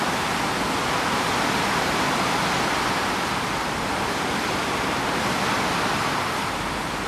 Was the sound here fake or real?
real